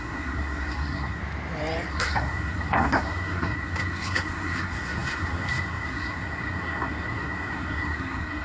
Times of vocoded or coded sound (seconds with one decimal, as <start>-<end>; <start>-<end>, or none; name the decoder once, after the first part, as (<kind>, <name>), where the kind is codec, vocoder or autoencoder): 0.0-1.2 (codec, SNAC); 1.9-8.4